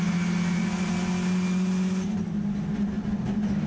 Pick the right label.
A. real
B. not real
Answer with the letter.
A